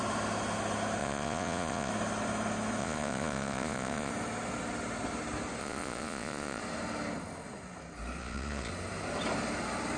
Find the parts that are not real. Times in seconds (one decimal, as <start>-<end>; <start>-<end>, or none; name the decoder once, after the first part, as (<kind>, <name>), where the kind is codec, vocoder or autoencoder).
1.0-1.9 (vocoder, Vocos); 2.8-4.1; 5.6-6.6; 8.2-8.7